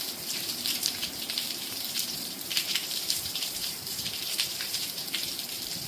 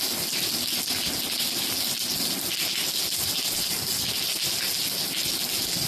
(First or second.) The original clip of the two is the second